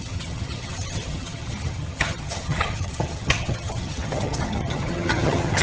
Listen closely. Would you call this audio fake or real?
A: fake